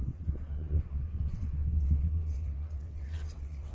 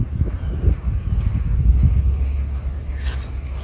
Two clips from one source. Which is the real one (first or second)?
second